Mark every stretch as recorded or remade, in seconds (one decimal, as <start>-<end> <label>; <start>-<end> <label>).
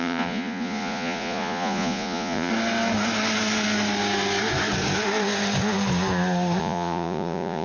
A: 0.0-2.5 remade; 2.5-6.6 recorded; 6.6-7.6 remade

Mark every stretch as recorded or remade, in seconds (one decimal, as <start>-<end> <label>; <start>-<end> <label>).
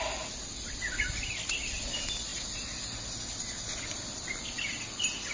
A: 0.0-5.3 recorded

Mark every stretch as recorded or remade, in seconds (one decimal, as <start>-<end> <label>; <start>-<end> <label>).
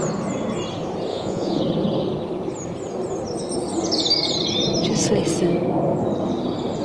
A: 0.0-1.1 recorded; 1.1-1.6 remade; 1.6-6.8 recorded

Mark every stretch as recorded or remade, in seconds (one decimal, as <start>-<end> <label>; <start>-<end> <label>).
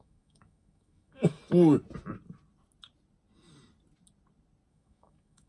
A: 0.0-1.4 remade; 1.4-4.7 recorded; 4.7-5.5 remade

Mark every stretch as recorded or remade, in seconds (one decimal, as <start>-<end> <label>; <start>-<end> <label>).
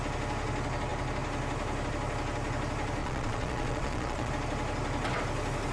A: 0.0-3.0 recorded; 3.0-4.3 remade; 4.3-5.7 recorded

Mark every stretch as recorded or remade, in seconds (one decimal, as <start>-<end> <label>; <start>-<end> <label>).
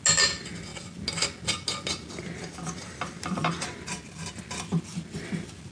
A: 0.0-5.7 recorded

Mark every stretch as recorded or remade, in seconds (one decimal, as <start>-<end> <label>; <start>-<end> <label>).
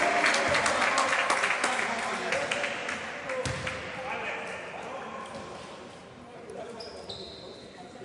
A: 0.0-6.0 recorded; 6.0-6.9 remade; 6.9-8.0 recorded